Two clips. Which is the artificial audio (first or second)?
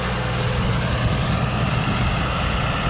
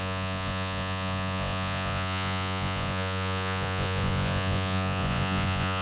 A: second